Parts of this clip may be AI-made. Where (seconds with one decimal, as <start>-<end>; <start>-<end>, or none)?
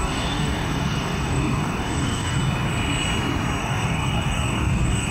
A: 0.0-2.4; 3.6-5.1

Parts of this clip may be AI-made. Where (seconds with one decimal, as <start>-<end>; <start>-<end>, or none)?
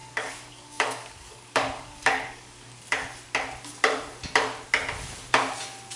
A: 0.0-2.8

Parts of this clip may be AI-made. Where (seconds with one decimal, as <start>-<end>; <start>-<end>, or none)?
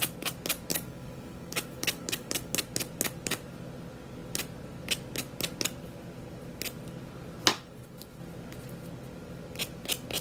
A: 0.7-2.6; 7.5-8.2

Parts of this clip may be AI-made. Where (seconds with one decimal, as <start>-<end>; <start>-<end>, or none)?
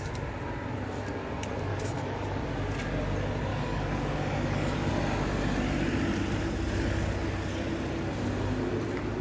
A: 1.7-2.4; 3.5-4.9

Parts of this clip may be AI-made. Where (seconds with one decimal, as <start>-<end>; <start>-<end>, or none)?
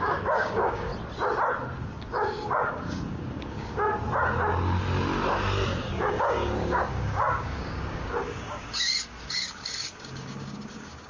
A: 0.0-0.9; 1.8-3.9; 5.8-11.1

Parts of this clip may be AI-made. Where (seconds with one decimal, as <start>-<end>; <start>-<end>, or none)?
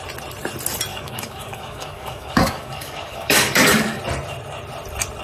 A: 0.9-4.0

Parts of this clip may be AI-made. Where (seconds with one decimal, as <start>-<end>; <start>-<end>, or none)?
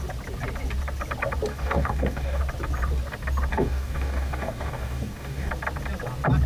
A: 1.5-2.4; 3.5-5.5